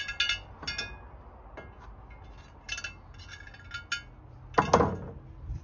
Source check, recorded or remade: recorded